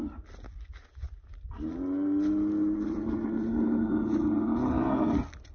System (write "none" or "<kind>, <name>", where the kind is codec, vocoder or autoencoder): none